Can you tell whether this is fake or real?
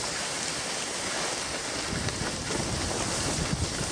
real